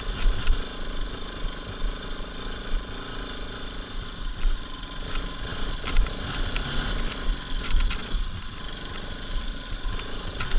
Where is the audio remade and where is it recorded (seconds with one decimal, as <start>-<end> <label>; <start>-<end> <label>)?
0.0-10.6 recorded